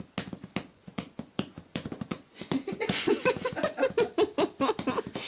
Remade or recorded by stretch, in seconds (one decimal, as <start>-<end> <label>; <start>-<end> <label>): 0.0-0.7 recorded; 0.7-3.9 remade; 3.9-5.3 recorded